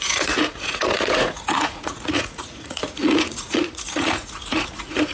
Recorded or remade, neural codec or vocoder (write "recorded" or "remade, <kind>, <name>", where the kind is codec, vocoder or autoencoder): remade, vocoder, Vocos